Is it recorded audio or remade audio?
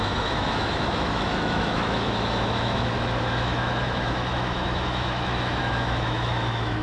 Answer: remade